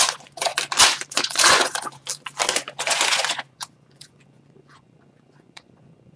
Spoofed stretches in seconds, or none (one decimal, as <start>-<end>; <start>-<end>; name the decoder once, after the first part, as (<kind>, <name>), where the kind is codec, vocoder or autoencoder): 0.0-0.5 (vocoder, Vocos); 1.1-2.0; 2.5-6.2